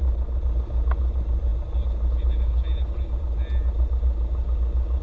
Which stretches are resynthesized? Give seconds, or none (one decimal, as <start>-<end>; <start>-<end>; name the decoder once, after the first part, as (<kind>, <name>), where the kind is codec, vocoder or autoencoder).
none